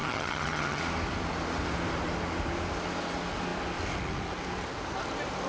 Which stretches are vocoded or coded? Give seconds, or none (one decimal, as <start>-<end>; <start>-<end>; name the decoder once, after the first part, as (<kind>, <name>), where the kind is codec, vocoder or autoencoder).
0.0-0.8 (vocoder, HiFi-GAN)

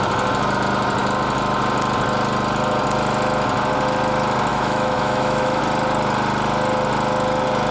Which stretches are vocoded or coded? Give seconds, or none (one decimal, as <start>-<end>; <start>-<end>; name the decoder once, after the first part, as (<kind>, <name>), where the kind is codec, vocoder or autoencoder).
4.5-5.6 (autoencoder, DAC-VAE)

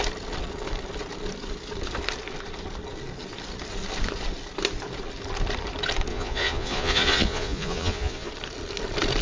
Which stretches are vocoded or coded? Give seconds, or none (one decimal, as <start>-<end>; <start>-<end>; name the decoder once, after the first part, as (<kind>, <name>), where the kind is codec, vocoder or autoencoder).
6.1-8.3 (vocoder, Vocos)

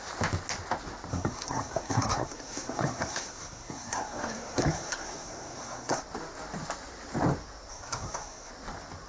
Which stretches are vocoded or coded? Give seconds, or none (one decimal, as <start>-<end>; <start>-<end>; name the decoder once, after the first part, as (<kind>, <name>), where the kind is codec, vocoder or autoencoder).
1.1-6.0 (codec, SNAC); 7.7-8.5

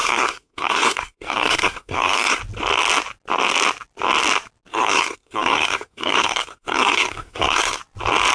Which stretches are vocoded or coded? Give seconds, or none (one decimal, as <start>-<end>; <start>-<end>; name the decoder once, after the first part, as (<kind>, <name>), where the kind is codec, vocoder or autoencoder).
0.0-2.4 (codec, SNAC); 4.7-7.8

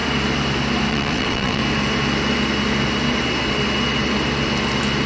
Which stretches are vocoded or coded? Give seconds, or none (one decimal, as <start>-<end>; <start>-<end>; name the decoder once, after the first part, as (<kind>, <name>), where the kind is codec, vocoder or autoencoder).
0.9-1.6 (vocoder, WaveNeXt)